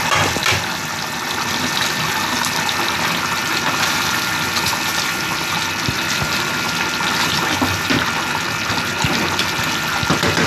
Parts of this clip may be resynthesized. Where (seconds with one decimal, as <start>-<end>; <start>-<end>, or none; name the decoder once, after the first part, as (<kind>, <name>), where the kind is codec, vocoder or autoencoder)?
4.9-5.7 (vocoder, BigVGAN v2)